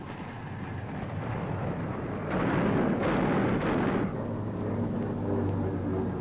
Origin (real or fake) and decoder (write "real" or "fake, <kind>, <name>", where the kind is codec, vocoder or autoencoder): real